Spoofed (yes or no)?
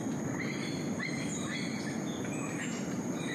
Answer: no